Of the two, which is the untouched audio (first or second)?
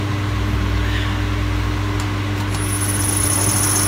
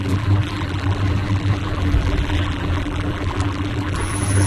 first